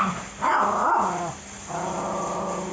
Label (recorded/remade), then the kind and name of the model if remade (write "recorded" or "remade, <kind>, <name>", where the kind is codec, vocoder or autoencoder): recorded